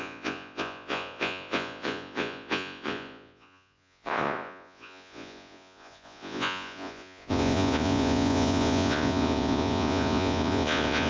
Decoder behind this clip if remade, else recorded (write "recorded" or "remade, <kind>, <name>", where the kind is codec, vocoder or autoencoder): remade, vocoder, Vocos